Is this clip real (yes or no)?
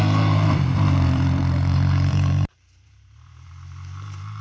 no